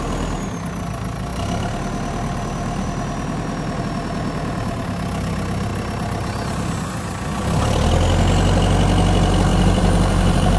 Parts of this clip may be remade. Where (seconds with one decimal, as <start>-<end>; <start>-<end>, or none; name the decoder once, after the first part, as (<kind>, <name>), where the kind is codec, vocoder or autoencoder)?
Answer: 9.5-10.6 (vocoder, BigVGAN v2)